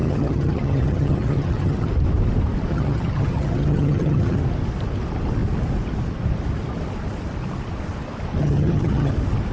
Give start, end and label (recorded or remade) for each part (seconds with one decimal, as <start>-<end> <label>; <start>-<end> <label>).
0.0-1.9 remade; 1.9-2.7 recorded; 2.7-4.4 remade; 4.4-8.4 recorded; 8.4-9.1 remade; 9.1-9.5 recorded